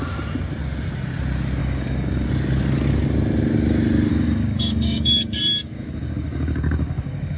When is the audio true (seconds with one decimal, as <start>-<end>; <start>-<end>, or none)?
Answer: 0.0-1.6; 2.3-4.1